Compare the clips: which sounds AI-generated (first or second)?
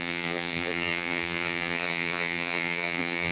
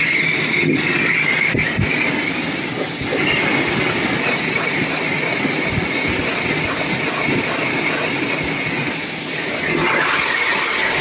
first